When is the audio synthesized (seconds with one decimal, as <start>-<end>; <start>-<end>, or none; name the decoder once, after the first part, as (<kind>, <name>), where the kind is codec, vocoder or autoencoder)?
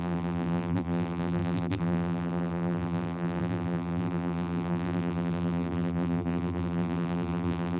0.0-7.8 (vocoder, BigVGAN v2)